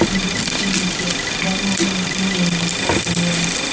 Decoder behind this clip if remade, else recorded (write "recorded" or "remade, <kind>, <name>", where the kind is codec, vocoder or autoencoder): recorded